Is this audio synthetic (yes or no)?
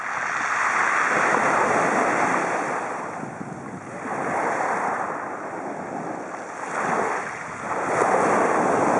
no